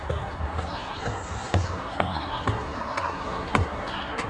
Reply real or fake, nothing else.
fake